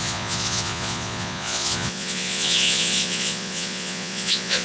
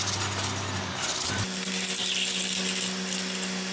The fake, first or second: first